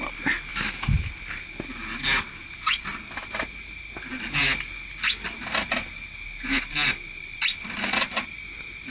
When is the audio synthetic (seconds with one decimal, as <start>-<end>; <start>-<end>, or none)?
0.5-1.1